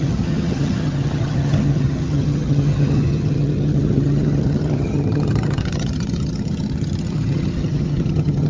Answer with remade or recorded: remade